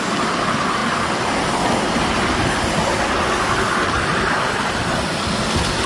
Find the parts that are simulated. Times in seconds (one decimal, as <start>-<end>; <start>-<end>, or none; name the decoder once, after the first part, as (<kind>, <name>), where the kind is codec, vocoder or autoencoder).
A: none